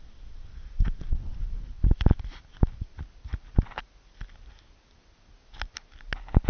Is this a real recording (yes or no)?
yes